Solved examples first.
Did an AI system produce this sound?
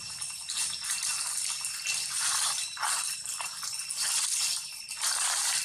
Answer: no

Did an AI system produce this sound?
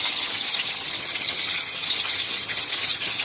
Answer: yes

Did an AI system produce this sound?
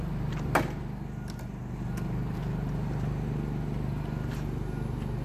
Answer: no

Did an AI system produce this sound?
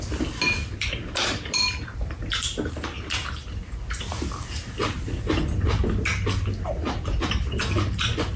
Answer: no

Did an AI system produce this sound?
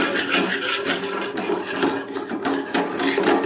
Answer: no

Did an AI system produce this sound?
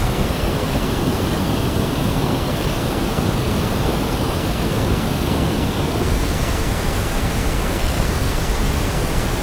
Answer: yes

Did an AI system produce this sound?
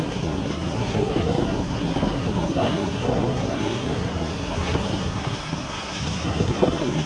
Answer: yes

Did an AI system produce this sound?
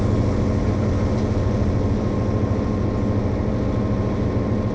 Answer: no